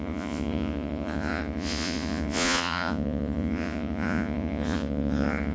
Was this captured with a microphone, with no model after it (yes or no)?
no